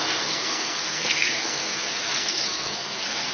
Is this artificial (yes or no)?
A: yes